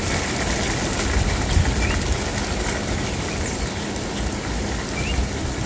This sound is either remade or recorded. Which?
recorded